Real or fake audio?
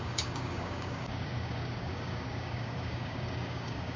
fake